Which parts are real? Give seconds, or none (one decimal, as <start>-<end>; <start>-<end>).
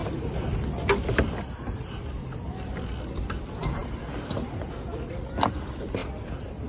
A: 0.0-6.7